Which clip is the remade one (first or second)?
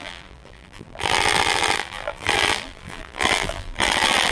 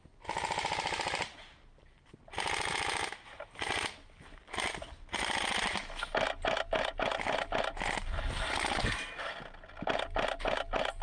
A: first